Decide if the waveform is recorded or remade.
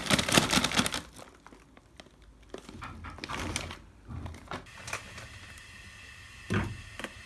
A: recorded